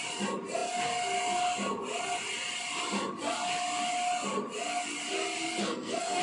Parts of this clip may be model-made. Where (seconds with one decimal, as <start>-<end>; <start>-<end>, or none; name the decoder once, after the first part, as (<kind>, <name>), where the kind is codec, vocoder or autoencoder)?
5.6-6.2 (codec, SNAC)